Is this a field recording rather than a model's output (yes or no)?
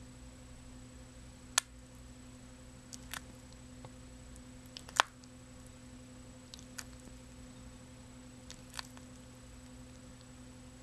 yes